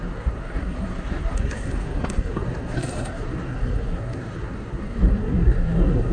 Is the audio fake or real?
fake